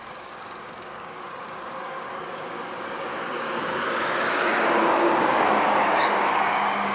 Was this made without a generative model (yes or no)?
no